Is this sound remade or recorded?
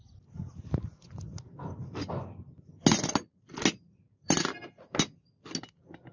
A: recorded